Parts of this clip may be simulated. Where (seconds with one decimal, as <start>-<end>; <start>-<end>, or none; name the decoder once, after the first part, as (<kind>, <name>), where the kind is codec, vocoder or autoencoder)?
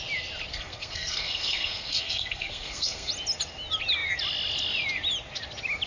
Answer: 0.5-3.1 (codec, SNAC)